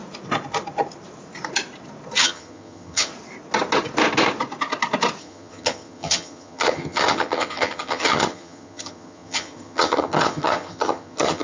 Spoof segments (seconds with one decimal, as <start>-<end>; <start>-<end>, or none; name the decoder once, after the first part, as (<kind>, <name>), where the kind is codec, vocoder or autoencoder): 2.2-3.1 (vocoder, HiFi-GAN); 5.2-11.4